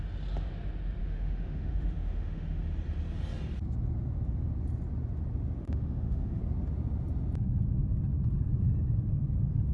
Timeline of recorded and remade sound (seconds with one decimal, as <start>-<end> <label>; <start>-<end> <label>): 0.0-1.0 recorded; 1.0-2.6 remade; 2.6-5.6 recorded; 5.6-6.4 remade; 6.4-9.7 recorded